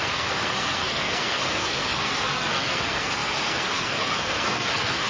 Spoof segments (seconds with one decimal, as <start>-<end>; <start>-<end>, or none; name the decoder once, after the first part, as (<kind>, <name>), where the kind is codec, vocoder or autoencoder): 0.0-5.1 (codec, SNAC)